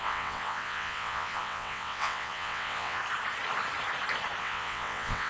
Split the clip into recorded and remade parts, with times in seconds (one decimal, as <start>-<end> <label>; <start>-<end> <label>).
0.0-3.0 remade; 3.0-4.4 recorded; 4.4-5.3 remade